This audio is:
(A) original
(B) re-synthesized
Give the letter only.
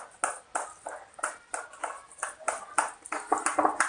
A